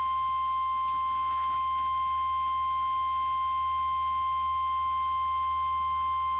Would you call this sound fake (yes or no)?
no